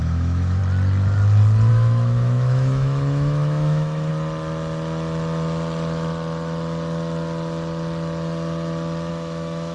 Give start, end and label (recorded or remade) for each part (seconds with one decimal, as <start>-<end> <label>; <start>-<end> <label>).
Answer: 0.0-0.6 remade; 0.6-1.7 recorded; 1.7-4.1 remade; 4.1-9.1 recorded; 9.1-9.7 remade